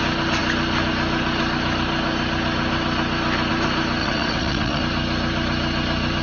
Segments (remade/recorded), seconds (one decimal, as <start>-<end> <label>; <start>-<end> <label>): 0.0-4.0 recorded; 4.0-4.8 remade; 4.8-6.2 recorded